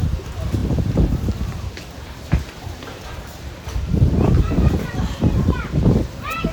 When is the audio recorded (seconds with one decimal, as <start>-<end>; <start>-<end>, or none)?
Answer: none